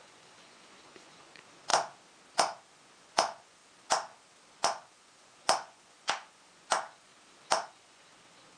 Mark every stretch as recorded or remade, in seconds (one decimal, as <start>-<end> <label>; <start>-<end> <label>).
0.0-1.7 remade; 1.7-2.7 recorded; 2.7-3.6 remade; 3.6-4.5 recorded; 4.5-7.1 remade; 7.1-7.7 recorded; 7.7-8.6 remade